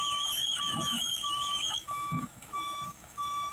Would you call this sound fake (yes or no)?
yes